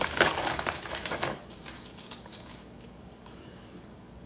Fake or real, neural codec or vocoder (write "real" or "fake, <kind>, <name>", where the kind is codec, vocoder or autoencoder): fake, codec, DAC